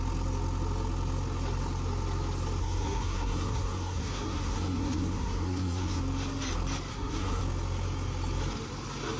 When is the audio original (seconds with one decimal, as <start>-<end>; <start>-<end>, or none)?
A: 0.0-2.6; 6.0-6.9; 7.4-9.2

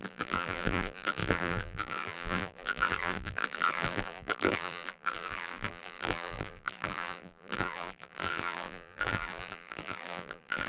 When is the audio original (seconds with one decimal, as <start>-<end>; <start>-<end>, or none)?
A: none

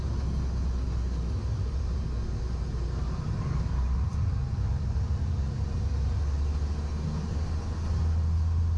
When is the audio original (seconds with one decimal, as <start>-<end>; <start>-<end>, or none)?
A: 0.0-1.4; 2.0-4.1; 6.2-8.8

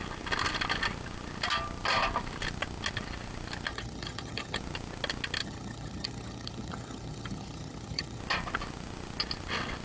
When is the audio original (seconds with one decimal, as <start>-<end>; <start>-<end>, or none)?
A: 0.0-3.7; 4.6-5.4; 8.2-9.8

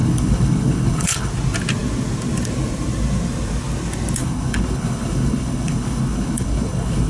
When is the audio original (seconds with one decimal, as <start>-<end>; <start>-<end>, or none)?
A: 1.3-4.2